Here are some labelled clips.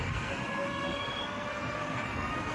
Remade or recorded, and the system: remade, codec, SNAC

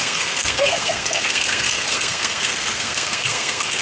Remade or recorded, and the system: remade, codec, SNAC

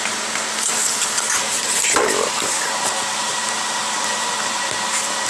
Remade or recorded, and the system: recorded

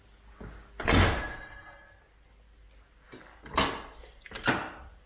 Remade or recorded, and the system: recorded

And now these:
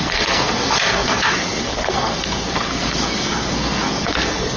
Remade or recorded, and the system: remade, codec, SNAC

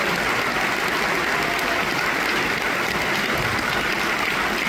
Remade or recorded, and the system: recorded